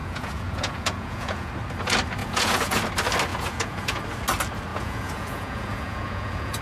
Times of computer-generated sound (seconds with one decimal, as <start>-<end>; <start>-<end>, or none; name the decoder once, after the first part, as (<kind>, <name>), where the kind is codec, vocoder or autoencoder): 0.0-1.5 (vocoder, Vocos); 2.2-2.8; 3.3-4.0; 4.7-6.6

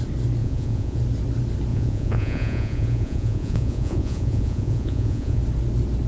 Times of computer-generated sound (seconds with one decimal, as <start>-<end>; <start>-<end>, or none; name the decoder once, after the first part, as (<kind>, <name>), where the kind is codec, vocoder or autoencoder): 0.4-1.0 (vocoder, Vocos); 1.7-5.4

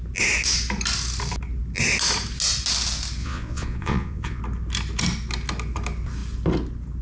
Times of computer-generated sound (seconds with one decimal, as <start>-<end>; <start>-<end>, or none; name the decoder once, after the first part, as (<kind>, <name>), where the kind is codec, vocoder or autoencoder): 3.2-4.4 (vocoder, Vocos)

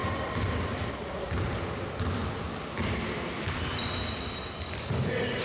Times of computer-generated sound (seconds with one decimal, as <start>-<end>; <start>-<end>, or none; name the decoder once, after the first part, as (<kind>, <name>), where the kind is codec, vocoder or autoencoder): none

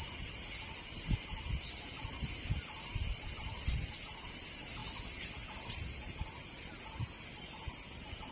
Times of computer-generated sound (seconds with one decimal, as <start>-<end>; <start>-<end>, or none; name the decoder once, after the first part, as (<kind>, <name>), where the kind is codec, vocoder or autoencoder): none